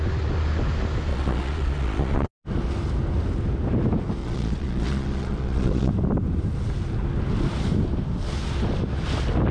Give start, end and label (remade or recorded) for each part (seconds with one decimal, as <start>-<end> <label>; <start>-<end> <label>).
0.0-1.1 recorded; 1.1-2.3 remade; 2.3-4.2 recorded; 4.2-5.9 remade; 5.9-9.5 recorded